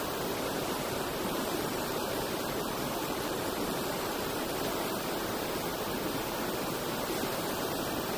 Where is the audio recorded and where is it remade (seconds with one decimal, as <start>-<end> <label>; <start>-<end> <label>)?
0.0-1.1 recorded; 1.1-4.5 remade; 4.5-8.2 recorded